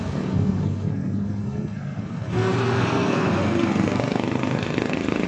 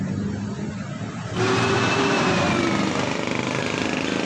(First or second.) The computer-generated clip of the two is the first